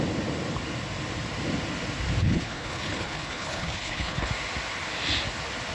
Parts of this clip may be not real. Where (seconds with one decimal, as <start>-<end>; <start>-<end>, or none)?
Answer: 2.2-4.3